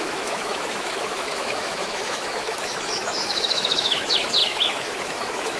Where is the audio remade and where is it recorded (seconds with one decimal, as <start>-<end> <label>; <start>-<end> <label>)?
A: 0.0-5.6 remade